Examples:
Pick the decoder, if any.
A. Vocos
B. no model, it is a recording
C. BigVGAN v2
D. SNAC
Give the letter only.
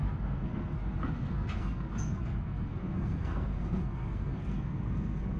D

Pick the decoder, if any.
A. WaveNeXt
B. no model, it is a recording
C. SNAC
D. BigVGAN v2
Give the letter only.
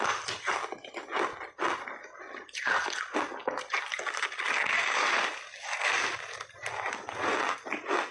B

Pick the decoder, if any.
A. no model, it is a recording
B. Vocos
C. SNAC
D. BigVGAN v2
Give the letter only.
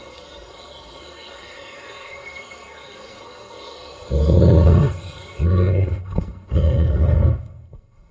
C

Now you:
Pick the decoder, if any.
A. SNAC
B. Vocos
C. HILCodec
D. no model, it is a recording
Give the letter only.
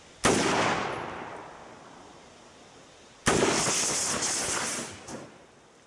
D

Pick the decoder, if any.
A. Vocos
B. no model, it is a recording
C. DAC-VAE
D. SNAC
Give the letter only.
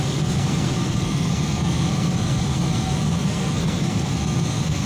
D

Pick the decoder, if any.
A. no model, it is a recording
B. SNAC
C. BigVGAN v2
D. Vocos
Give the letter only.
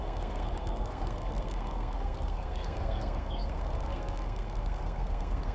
B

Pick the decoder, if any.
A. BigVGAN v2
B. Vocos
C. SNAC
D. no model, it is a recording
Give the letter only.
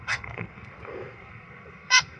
C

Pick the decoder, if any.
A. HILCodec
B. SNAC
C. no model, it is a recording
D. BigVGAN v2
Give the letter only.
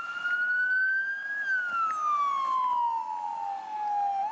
C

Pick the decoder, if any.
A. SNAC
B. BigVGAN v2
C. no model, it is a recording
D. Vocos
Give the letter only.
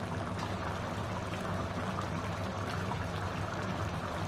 C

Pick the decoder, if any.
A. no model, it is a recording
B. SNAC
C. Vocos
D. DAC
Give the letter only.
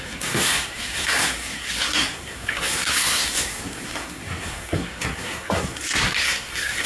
B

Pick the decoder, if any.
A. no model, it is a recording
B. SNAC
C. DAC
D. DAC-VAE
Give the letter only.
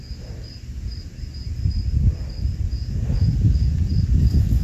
A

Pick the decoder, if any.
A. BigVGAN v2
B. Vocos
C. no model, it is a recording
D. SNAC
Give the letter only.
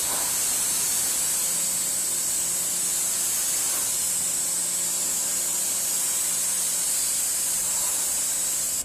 C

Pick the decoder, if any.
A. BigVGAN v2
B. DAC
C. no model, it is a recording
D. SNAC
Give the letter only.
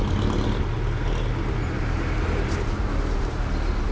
C